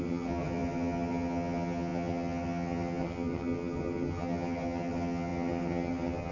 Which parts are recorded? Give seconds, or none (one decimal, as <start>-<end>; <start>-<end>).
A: none

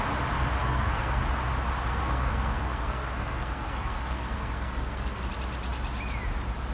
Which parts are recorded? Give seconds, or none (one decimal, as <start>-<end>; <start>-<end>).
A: 0.0-0.6; 1.2-1.9; 5.2-6.7

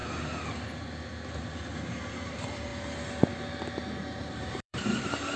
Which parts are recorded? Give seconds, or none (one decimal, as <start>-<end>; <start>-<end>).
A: 0.0-1.8; 2.7-4.2

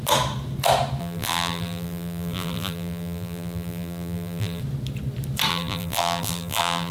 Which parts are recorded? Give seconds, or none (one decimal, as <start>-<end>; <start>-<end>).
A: 0.0-1.0; 4.6-5.5

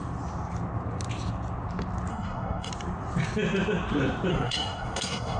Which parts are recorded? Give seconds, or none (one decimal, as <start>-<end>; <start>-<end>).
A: 0.0-2.1; 2.7-4.3

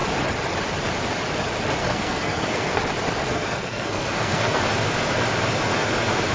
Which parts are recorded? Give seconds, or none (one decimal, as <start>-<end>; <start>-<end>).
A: 0.0-1.8; 2.8-3.3; 4.6-6.3

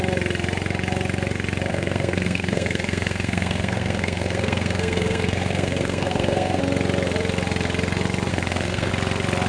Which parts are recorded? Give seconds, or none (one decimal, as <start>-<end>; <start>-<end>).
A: 0.0-1.7; 6.6-8.3; 8.9-9.5

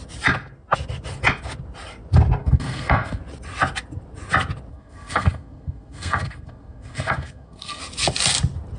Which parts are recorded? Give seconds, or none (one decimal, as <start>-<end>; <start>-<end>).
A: 0.0-2.4; 3.2-4.7; 7.8-8.8